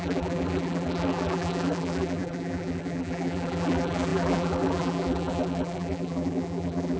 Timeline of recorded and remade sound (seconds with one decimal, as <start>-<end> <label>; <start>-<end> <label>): 0.0-7.0 remade

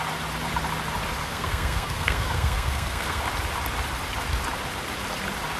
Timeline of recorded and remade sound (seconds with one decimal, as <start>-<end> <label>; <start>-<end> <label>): 0.0-1.2 recorded; 1.2-3.2 remade; 3.2-5.6 recorded